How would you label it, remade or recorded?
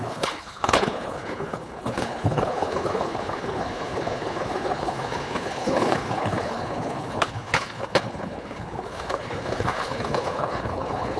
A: remade